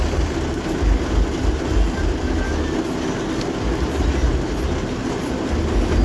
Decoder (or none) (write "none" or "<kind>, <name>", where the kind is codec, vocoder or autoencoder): none